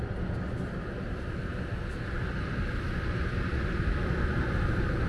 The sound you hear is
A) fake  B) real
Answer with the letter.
B